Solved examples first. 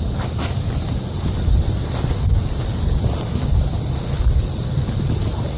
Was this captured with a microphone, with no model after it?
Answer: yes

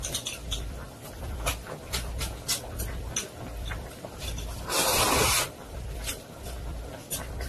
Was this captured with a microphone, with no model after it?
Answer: yes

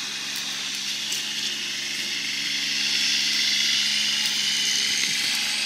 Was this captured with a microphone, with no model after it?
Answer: yes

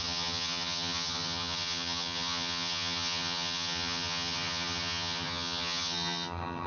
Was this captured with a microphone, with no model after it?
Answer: no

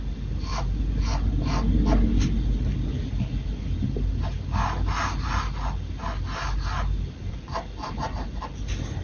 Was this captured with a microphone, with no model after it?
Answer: yes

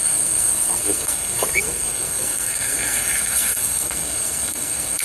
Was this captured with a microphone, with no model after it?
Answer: no